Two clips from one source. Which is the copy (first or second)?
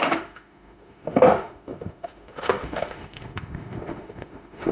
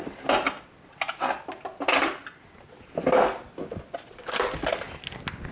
first